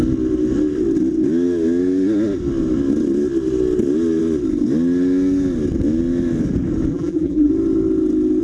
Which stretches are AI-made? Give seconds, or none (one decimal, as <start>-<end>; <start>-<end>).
6.9-7.5